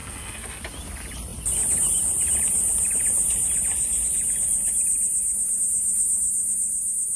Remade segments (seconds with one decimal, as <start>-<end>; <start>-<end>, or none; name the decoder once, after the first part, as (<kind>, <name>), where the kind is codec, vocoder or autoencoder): 0.0-0.6 (codec, SNAC)